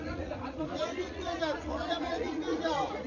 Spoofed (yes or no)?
yes